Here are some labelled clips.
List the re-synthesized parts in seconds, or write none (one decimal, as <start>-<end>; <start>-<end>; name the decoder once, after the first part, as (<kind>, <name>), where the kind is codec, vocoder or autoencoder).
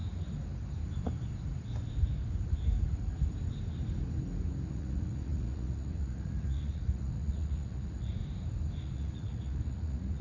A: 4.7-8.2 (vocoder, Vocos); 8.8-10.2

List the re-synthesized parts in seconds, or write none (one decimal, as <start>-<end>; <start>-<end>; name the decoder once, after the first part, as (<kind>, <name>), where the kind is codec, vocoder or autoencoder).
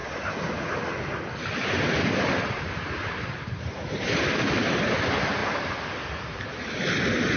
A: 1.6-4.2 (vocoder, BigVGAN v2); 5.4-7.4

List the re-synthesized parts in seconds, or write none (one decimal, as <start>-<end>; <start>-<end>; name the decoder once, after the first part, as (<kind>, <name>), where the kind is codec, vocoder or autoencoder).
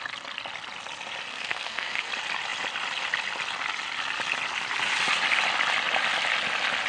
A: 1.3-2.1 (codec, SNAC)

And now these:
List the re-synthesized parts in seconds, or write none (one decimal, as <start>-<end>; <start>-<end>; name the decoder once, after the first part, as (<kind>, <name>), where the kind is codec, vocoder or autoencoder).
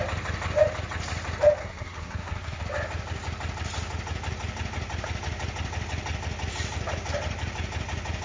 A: 1.6-2.6 (codec, SNAC)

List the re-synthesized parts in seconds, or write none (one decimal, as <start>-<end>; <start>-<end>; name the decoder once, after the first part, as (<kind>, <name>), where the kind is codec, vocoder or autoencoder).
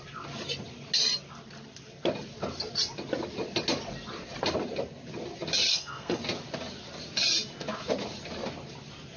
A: 5.7-6.2 (codec, SNAC)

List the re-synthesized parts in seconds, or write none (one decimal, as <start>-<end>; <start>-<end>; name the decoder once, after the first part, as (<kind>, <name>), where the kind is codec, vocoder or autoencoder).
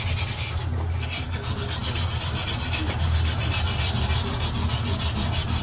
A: none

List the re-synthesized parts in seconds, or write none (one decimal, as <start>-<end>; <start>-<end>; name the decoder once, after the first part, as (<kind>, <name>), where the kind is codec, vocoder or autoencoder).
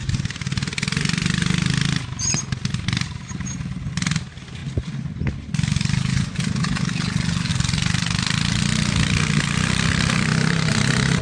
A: 10.3-11.2 (vocoder, BigVGAN v2)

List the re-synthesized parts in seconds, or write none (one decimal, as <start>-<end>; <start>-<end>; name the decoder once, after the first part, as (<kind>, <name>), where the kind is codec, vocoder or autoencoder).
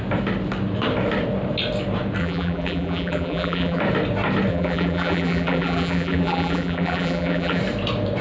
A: 2.2-3.8 (vocoder, BigVGAN v2); 4.5-7.6